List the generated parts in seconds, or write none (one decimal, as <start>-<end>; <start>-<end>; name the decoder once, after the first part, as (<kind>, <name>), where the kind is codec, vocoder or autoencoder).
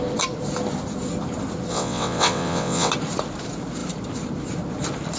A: 1.7-2.9 (vocoder, WaveNeXt)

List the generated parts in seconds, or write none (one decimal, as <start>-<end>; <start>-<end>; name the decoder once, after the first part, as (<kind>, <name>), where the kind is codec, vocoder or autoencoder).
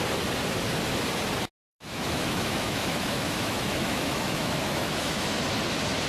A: 1.7-5.4 (autoencoder, DAC-VAE)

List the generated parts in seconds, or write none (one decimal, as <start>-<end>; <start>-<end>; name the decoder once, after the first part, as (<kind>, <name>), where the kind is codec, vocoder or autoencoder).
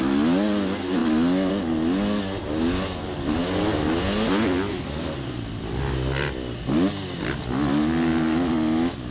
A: none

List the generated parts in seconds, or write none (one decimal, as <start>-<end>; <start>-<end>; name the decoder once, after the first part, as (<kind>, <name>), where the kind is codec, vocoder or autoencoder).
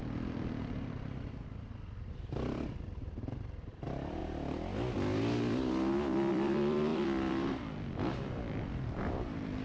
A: 0.0-4.2 (vocoder, BigVGAN v2); 6.3-9.6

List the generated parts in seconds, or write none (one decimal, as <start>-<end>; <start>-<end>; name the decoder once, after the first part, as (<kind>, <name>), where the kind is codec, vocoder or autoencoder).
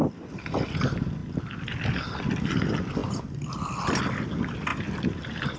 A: 3.0-4.0 (vocoder, BigVGAN v2); 4.7-5.6